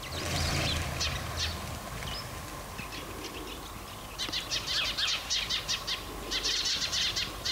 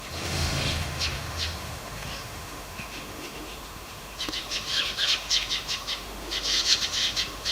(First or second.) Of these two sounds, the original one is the first